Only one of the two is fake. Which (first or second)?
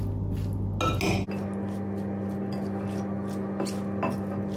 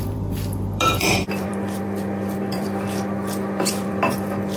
second